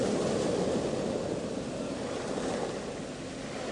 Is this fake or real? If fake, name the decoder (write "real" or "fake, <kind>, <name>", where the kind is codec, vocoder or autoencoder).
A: real